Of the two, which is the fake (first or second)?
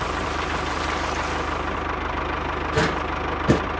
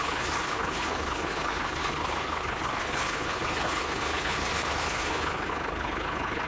second